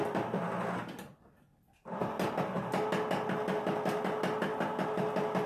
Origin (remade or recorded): recorded